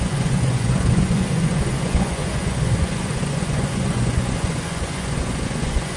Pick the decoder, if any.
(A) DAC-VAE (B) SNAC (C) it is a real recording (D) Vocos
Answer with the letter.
D